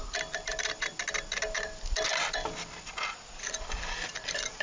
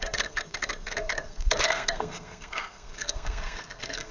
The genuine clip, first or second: first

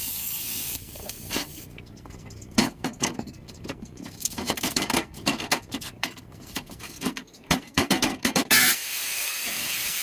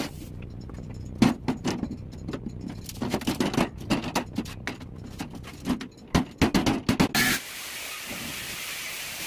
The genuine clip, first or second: second